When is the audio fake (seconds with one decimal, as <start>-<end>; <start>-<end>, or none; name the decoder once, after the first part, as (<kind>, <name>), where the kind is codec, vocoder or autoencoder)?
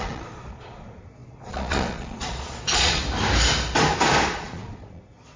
0.0-3.0 (vocoder, Vocos); 4.3-5.4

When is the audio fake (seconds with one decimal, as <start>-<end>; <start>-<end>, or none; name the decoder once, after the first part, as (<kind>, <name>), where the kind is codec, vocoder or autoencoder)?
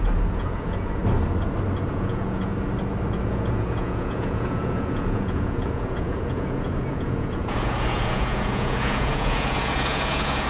0.0-1.0 (vocoder, Vocos); 1.9-2.5; 3.2-10.5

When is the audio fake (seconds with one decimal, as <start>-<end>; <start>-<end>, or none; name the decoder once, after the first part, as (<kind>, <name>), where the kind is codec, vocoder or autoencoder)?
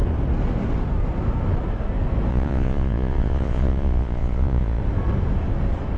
2.3-4.8 (vocoder, Vocos)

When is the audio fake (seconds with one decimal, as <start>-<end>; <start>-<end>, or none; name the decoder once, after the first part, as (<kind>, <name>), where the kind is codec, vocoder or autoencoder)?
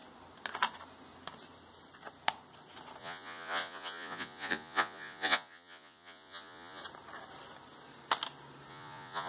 3.0-6.8 (vocoder, Vocos); 8.7-9.3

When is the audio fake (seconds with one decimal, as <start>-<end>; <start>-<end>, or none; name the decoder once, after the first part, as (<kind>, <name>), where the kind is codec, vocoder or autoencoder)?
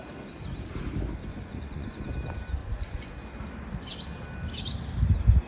1.3-2.1 (vocoder, Vocos); 2.6-3.1